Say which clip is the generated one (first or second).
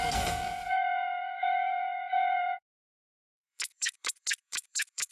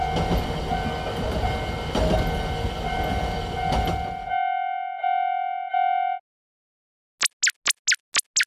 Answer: first